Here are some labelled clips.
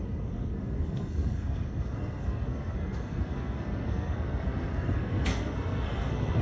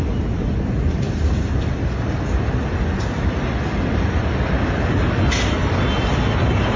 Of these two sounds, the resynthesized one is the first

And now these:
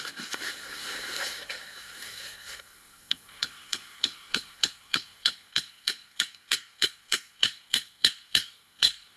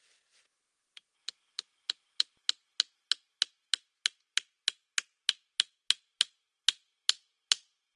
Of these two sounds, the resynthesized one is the first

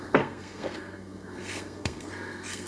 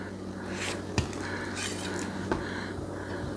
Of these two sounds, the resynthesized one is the first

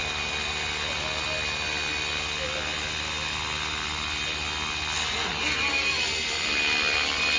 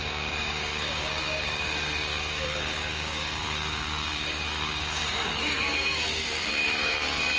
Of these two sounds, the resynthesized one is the second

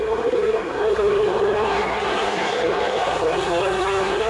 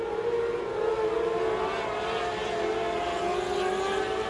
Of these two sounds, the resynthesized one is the first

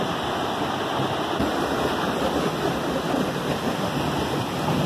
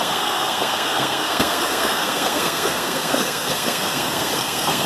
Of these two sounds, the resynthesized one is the second